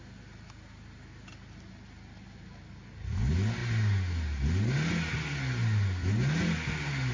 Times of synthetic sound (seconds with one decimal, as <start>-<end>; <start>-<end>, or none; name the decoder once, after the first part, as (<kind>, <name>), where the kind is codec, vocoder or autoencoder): none